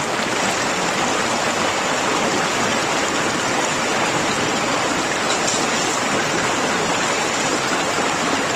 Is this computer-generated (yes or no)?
no